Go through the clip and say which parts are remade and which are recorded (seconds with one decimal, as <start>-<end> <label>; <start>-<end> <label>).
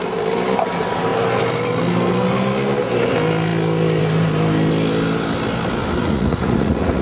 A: 0.0-6.0 recorded; 6.0-7.0 remade